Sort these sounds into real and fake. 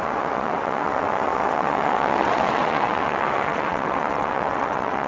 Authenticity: fake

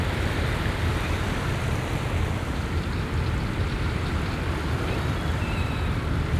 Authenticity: fake